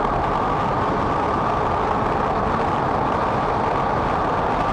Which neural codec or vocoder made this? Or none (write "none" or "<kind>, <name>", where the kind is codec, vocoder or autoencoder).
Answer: none